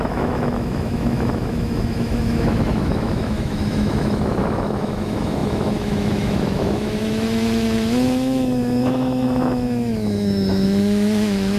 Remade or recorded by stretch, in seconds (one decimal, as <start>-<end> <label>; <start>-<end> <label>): 0.0-11.6 remade